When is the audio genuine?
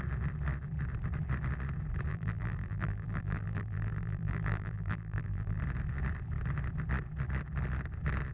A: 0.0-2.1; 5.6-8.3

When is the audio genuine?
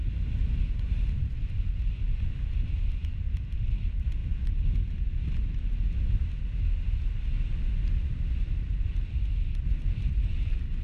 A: 0.0-10.8